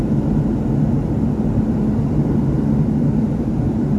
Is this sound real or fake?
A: real